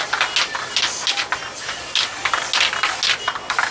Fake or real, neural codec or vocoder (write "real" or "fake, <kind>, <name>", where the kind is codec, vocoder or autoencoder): real